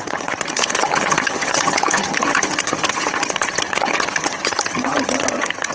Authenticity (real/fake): fake